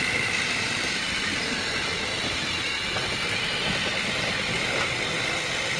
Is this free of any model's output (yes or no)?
no